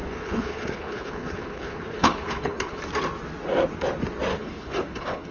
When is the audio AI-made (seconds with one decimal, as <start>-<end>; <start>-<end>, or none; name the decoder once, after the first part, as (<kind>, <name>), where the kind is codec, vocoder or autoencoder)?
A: 0.0-2.8 (codec, HILCodec); 4.3-5.3